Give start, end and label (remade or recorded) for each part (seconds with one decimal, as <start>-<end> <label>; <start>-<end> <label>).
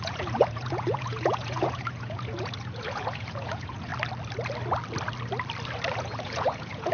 0.0-3.9 remade; 3.9-6.0 recorded; 6.0-6.9 remade